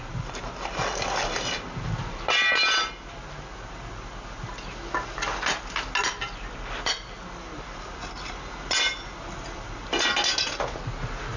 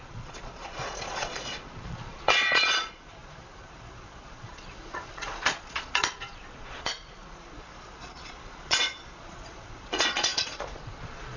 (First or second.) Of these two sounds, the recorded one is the first